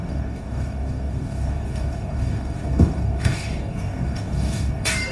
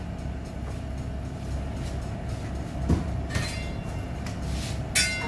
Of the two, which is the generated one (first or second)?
first